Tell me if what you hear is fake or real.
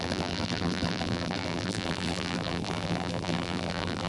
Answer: fake